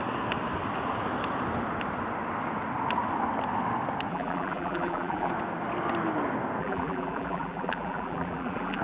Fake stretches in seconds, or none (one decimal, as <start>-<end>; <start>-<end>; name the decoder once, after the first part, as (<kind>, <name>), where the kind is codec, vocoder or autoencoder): 4.1-5.3 (vocoder, BigVGAN v2); 6.6-8.8